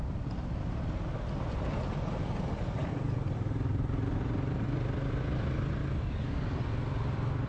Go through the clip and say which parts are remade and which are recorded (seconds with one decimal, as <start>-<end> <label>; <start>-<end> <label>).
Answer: 0.0-2.8 recorded; 2.8-5.2 remade; 5.2-7.5 recorded